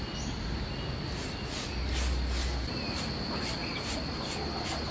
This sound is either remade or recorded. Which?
recorded